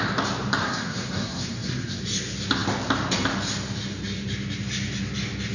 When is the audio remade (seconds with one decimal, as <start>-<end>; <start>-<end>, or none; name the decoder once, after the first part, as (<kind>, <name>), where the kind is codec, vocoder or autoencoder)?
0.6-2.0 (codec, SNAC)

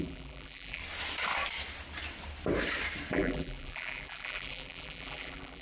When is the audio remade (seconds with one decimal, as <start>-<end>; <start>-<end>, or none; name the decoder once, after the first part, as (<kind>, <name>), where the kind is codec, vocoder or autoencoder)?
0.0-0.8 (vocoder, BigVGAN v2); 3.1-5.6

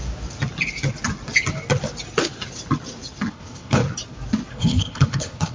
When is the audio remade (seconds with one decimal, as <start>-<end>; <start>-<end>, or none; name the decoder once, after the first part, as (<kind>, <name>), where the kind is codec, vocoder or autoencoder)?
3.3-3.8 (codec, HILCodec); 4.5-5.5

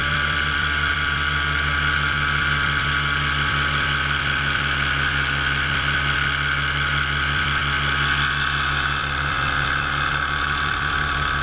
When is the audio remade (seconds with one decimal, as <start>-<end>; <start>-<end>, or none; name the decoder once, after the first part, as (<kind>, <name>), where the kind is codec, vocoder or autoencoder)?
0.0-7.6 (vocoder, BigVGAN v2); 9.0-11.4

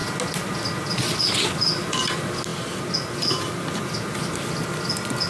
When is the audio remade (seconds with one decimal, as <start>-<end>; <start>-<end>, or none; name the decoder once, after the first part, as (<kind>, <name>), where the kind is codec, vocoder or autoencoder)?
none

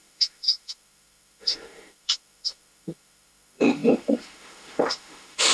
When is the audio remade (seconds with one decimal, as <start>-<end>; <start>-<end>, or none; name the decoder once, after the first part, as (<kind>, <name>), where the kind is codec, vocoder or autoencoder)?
0.0-5.5 (autoencoder, DAC-VAE)